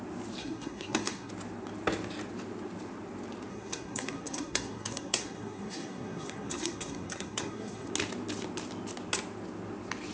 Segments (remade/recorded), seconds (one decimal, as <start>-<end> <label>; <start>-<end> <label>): 0.0-0.4 recorded; 0.4-1.3 remade; 1.3-3.5 recorded; 3.5-7.9 remade; 7.9-10.1 recorded